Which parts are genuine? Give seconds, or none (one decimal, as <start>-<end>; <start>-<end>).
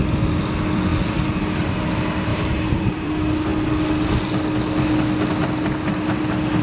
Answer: 0.0-2.3; 3.1-6.6